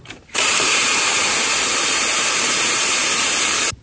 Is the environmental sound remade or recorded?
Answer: remade